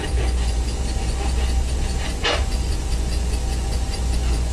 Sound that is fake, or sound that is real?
fake